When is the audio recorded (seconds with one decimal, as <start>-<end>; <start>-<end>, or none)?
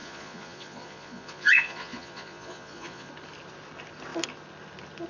3.1-5.1